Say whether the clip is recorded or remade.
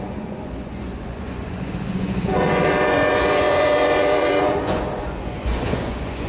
remade